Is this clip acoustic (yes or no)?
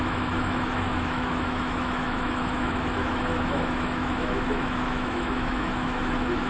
no